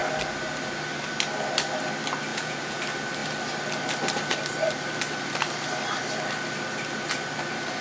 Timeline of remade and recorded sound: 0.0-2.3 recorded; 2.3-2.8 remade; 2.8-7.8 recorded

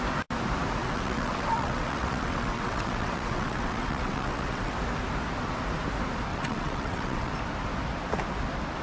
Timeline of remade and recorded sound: 0.0-0.8 recorded; 0.8-4.7 remade; 4.7-6.3 recorded; 6.3-7.3 remade; 7.3-8.8 recorded

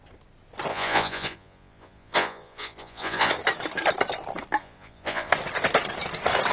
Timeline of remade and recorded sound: 0.0-0.7 recorded; 0.7-3.3 remade; 3.3-4.6 recorded; 4.6-5.3 remade; 5.3-6.5 recorded

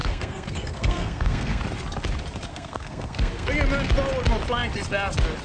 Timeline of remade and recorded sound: 0.0-1.6 remade; 1.6-2.5 recorded; 2.5-3.5 remade; 3.5-5.4 recorded